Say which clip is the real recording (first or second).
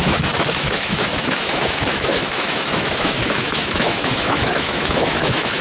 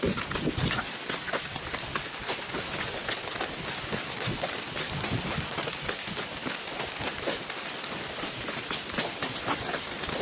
second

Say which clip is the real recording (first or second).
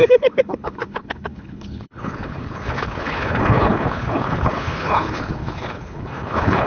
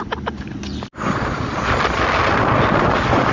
second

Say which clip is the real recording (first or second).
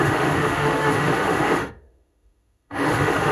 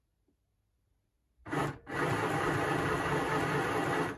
second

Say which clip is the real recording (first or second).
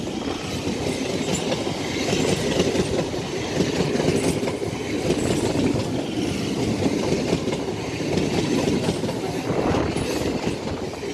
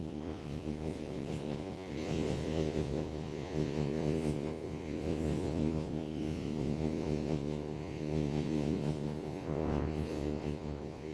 first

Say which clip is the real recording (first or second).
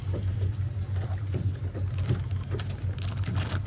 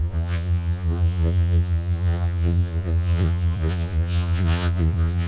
first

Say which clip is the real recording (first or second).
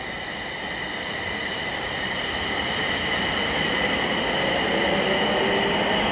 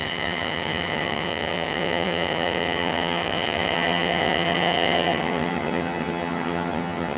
first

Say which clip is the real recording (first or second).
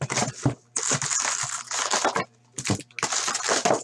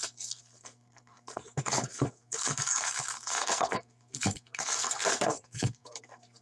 first